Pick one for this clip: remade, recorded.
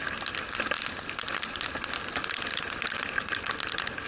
recorded